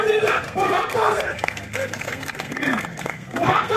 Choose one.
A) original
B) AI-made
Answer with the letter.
B